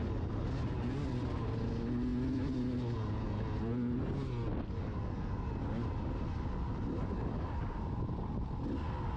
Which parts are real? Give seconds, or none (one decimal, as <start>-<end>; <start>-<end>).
0.0-9.2